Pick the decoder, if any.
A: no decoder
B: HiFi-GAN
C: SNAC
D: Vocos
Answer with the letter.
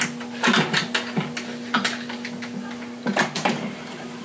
A